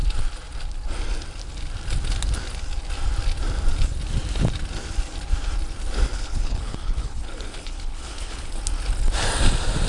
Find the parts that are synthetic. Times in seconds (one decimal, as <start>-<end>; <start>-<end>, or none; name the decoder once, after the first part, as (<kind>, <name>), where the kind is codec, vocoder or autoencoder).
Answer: 6.1-8.6 (codec, HILCodec)